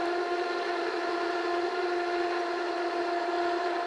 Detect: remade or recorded recorded